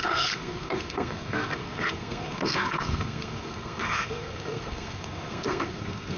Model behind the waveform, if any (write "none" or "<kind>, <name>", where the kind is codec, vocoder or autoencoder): codec, SNAC